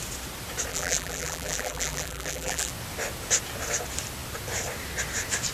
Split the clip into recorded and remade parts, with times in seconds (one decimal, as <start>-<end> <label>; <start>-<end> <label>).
0.0-0.7 recorded; 0.7-2.7 remade; 2.7-5.5 recorded